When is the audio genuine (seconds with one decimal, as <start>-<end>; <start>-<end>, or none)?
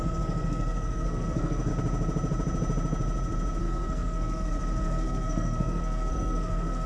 1.7-3.6